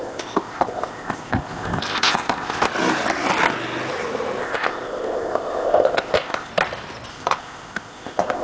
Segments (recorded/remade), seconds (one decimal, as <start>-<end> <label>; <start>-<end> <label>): 0.0-2.7 remade; 2.7-4.4 recorded; 4.4-6.5 remade; 6.5-7.1 recorded; 7.1-8.4 remade